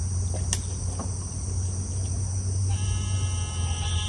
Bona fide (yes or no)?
yes